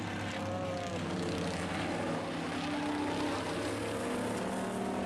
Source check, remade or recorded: recorded